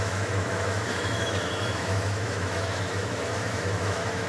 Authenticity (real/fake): fake